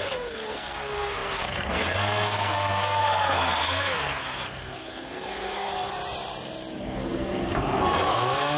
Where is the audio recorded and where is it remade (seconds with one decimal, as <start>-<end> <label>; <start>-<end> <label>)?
0.0-5.9 remade; 5.9-6.8 recorded; 6.8-8.6 remade